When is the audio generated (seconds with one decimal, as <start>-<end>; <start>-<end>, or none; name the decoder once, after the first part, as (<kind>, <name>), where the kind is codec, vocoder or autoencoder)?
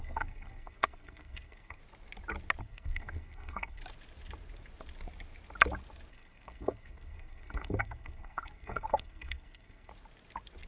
0.0-1.8 (codec, SNAC); 2.6-3.8; 6.1-9.9